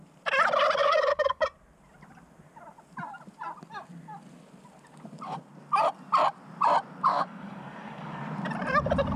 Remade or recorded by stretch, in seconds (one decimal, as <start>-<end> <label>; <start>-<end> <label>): 0.0-0.8 recorded; 0.8-1.4 remade; 1.4-7.1 recorded; 7.1-8.2 remade; 8.2-9.2 recorded